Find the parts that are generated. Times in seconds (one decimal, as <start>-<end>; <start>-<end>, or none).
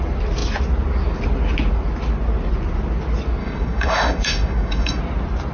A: 3.4-5.0